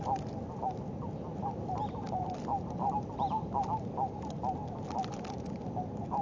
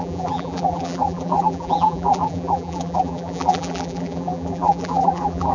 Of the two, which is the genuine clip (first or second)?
first